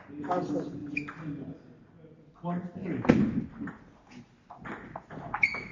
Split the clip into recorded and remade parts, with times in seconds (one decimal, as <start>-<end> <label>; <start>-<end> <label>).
0.0-5.7 recorded